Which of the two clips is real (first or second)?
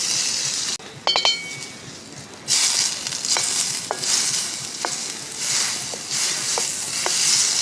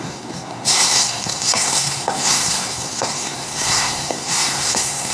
first